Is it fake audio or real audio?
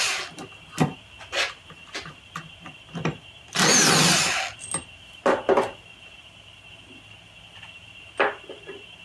real